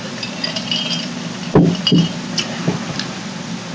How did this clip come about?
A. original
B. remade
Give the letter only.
A